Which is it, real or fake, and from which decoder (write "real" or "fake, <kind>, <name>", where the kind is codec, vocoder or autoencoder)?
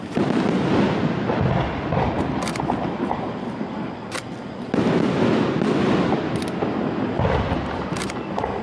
real